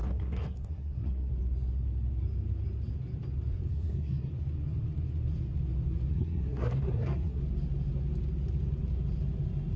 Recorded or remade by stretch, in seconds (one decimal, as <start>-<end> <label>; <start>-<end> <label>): 0.0-1.3 remade; 1.3-3.7 recorded; 3.7-4.3 remade; 4.3-6.1 recorded; 6.1-7.4 remade; 7.4-9.8 recorded